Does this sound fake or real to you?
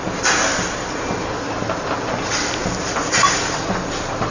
real